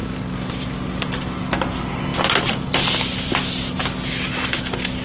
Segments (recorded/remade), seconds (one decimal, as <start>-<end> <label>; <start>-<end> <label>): 0.0-5.0 recorded